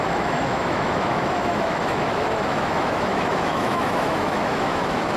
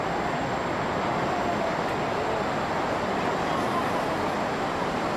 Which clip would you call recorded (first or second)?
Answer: second